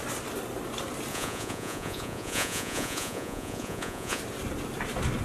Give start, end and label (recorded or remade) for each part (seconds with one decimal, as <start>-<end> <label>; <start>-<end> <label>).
0.0-1.1 recorded; 1.1-4.2 remade; 4.2-5.2 recorded